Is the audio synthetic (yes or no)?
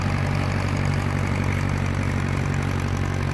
yes